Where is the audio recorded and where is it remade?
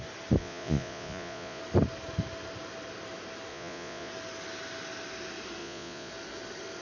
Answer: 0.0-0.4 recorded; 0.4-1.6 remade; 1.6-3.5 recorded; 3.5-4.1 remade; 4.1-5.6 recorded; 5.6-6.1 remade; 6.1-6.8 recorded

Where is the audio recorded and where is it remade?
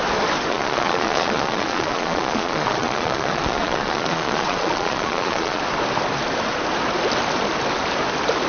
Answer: 0.0-0.5 recorded; 0.5-5.6 remade; 5.6-8.5 recorded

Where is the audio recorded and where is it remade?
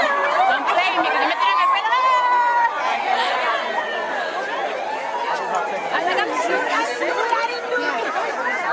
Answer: 0.0-8.7 recorded